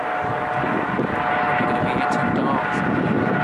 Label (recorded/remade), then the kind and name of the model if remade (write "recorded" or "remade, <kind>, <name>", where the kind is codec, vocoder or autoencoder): recorded